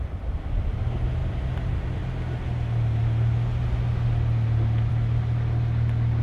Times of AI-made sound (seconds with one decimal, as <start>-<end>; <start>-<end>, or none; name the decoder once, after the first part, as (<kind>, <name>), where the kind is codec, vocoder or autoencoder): none